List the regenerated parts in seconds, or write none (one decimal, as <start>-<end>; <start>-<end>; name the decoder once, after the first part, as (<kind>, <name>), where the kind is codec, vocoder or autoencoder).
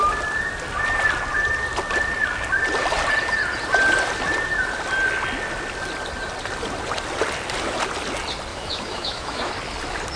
8.5-9.5 (autoencoder, DAC-VAE)